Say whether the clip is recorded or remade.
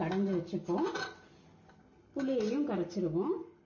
recorded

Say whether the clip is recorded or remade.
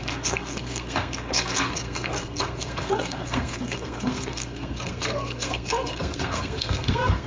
remade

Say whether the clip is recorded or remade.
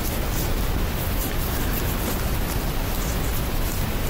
recorded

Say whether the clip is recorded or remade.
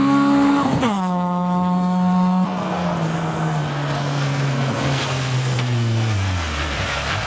remade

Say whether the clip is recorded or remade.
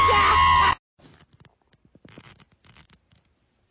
recorded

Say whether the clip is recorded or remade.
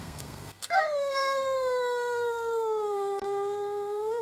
remade